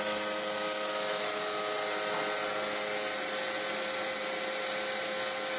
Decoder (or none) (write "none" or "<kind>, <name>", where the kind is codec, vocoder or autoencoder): none